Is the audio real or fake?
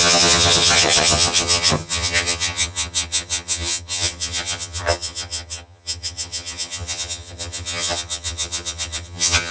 fake